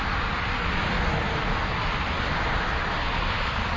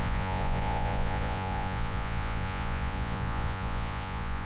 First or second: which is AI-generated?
second